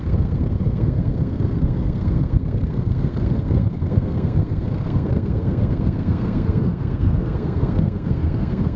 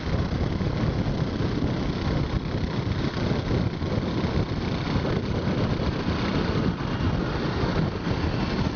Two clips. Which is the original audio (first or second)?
second